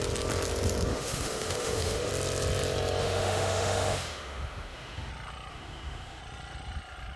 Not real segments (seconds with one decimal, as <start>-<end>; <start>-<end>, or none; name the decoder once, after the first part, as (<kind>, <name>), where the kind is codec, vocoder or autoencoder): 0.9-2.1 (autoencoder, DAC-VAE); 3.0-5.1; 5.5-6.2